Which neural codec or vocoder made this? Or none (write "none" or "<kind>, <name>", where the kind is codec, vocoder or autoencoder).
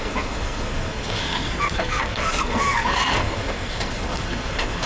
codec, SNAC